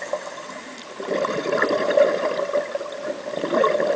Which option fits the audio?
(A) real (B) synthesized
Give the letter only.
A